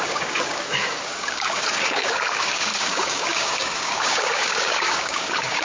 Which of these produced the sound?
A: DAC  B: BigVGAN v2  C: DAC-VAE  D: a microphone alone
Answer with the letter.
A